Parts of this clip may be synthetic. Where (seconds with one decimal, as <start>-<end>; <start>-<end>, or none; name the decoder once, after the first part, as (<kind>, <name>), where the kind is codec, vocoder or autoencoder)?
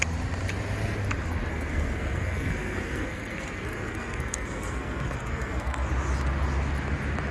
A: 1.5-5.9 (codec, SNAC)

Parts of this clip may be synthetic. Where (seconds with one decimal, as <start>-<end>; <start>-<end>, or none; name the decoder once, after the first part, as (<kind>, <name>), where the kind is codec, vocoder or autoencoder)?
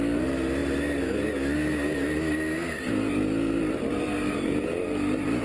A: none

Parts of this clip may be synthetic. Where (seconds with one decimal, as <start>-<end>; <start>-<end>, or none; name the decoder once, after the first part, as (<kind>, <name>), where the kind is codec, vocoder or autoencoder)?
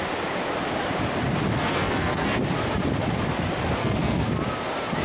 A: 1.6-2.4 (codec, SNAC); 3.8-4.3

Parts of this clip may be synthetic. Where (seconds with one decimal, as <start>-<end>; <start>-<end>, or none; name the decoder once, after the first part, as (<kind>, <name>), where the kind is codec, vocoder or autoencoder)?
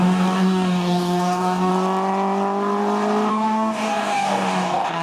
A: 0.0-1.7 (codec, DAC); 3.3-5.0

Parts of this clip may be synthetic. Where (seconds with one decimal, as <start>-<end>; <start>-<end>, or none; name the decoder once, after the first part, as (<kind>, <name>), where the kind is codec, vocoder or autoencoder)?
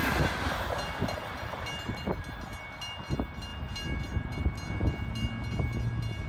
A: none